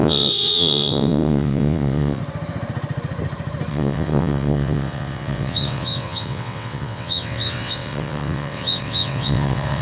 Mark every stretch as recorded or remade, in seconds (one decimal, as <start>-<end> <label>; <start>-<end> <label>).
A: 0.0-2.2 remade; 2.2-3.7 recorded; 3.7-9.8 remade